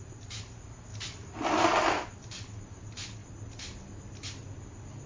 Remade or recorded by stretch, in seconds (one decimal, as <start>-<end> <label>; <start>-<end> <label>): 0.0-0.9 recorded; 0.9-1.4 remade; 1.4-3.2 recorded; 3.2-3.9 remade; 3.9-5.1 recorded